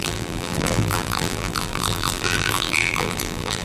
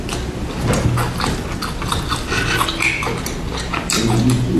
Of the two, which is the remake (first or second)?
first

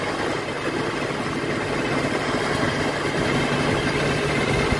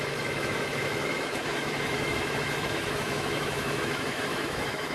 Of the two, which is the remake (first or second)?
second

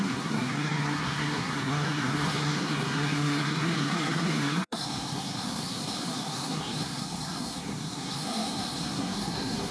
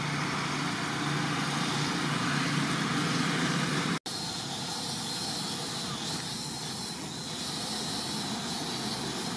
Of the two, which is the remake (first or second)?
first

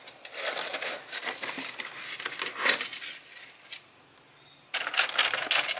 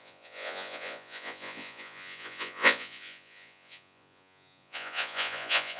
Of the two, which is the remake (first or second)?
second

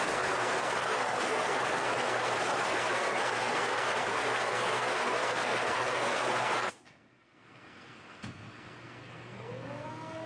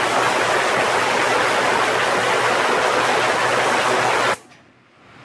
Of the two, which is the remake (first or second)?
first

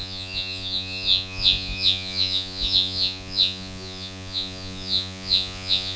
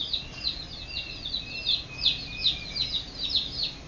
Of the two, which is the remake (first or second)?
first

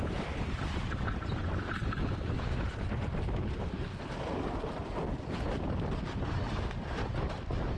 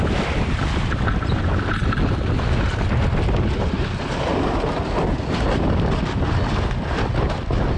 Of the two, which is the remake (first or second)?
first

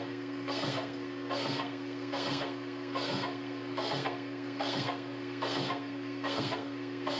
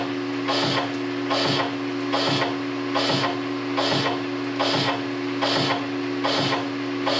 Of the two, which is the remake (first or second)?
first